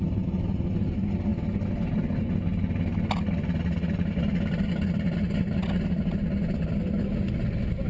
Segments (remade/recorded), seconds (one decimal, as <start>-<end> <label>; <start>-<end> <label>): 0.0-7.9 recorded

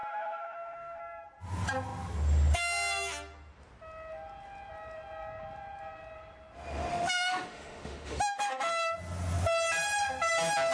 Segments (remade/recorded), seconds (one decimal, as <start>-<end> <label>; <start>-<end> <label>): 0.0-1.0 remade; 1.0-6.9 recorded; 6.9-8.7 remade; 8.7-10.7 recorded

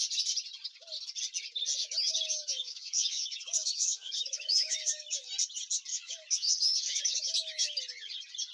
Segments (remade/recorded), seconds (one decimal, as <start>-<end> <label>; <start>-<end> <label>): 0.0-1.8 recorded; 1.8-5.3 remade; 5.3-5.9 recorded; 5.9-7.8 remade; 7.8-8.5 recorded

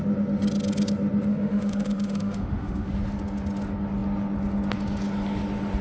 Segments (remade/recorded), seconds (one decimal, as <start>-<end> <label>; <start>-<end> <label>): 0.0-1.3 recorded; 1.3-2.9 remade; 2.9-5.8 recorded